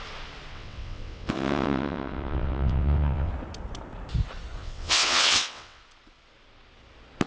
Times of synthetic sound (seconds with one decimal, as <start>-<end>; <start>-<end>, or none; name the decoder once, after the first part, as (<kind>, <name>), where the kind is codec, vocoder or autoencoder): 0.5-3.3 (vocoder, WaveNeXt); 4.6-5.8